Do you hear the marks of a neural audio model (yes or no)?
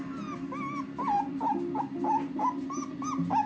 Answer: no